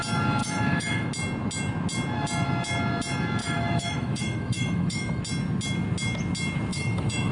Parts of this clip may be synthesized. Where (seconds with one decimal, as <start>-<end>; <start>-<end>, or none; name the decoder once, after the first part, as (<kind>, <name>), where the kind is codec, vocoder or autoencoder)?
0.4-1.1 (autoencoder, DAC-VAE); 3.4-5.2; 6.7-7.3